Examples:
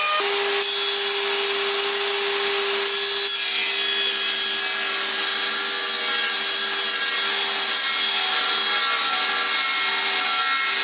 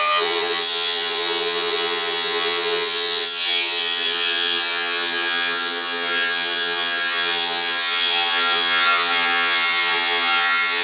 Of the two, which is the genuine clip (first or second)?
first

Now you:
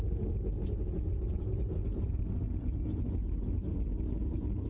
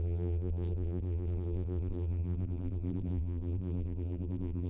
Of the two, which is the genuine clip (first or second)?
first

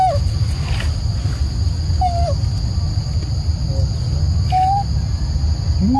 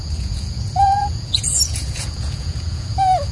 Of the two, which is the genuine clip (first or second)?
first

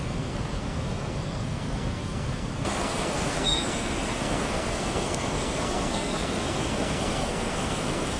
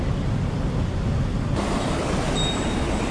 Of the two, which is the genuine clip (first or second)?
second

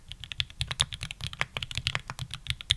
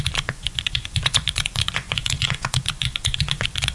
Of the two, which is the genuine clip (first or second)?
first